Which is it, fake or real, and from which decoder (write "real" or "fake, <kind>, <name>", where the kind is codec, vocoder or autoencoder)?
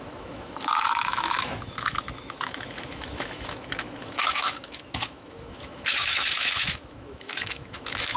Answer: fake, autoencoder, DAC-VAE